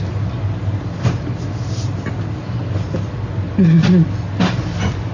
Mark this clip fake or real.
real